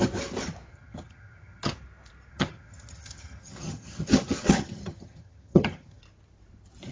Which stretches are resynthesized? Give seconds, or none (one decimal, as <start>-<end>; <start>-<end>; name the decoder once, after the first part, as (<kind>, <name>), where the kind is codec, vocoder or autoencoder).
0.7-1.7 (vocoder, HiFi-GAN); 2.3-6.0